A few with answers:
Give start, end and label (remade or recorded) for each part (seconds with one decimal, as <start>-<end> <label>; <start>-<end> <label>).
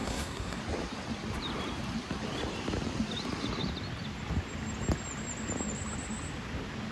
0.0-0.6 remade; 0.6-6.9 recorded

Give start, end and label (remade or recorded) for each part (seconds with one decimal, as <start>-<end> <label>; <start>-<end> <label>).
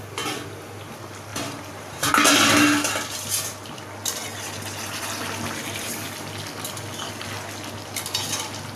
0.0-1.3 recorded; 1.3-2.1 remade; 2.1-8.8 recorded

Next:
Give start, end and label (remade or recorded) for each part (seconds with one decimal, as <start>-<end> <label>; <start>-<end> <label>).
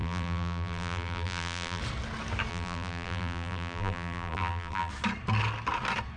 0.0-1.8 remade; 1.8-2.5 recorded; 2.5-4.9 remade; 4.9-6.2 recorded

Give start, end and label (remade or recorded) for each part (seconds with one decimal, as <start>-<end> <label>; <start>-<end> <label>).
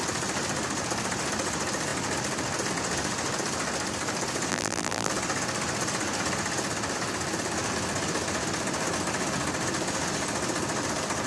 0.0-4.5 recorded; 4.5-5.1 remade; 5.1-11.3 recorded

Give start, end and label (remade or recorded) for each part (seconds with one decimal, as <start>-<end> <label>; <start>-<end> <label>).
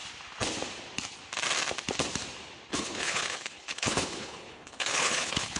0.0-2.7 recorded; 2.7-5.6 remade